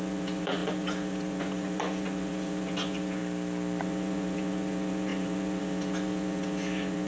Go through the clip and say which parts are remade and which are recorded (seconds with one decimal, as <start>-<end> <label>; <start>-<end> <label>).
0.0-3.2 remade; 3.2-3.8 recorded; 3.8-7.1 remade